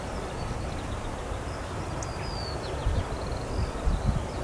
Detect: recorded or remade recorded